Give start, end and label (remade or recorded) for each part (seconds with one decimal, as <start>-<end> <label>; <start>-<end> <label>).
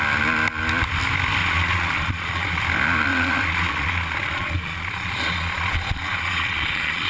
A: 0.0-1.4 recorded; 1.4-2.6 remade; 2.6-3.1 recorded; 3.1-7.1 remade